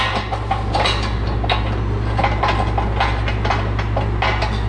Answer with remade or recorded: recorded